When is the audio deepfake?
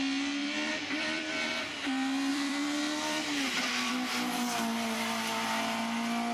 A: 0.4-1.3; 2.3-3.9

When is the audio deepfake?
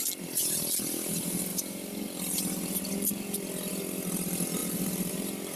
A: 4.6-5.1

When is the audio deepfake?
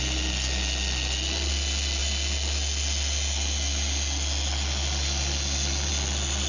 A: none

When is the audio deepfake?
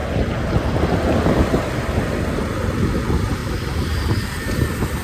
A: 3.4-5.0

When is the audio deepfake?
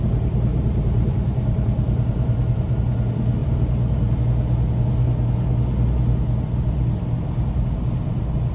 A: 0.5-2.8; 3.4-4.2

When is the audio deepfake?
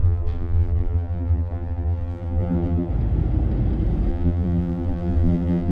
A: 0.0-2.9; 4.1-5.7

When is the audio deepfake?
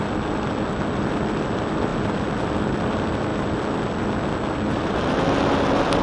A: none